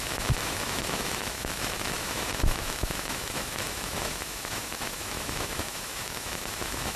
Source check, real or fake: fake